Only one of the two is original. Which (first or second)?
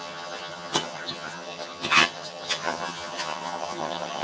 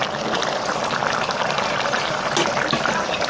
second